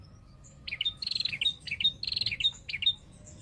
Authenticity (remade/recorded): remade